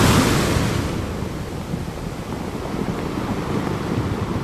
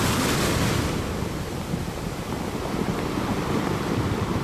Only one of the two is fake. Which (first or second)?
second